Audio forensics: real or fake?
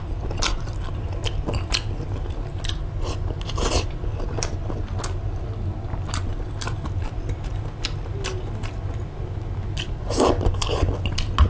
real